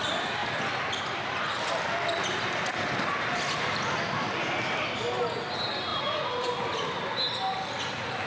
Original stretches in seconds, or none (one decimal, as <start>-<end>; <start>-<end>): 0.0-5.9; 6.5-8.3